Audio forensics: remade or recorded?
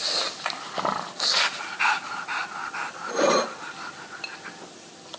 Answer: recorded